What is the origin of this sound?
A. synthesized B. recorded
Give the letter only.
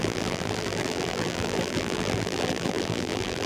A